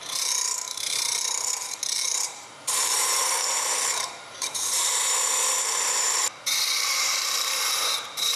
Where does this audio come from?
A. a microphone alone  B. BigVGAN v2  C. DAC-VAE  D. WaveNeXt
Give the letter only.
B